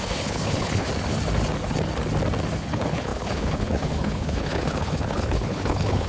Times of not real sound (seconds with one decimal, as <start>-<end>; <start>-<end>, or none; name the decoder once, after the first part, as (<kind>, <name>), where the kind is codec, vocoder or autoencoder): 0.0-0.9 (codec, HILCodec); 2.6-6.1